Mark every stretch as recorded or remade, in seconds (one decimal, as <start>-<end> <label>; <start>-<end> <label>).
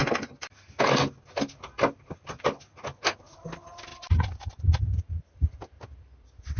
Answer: 0.0-6.6 recorded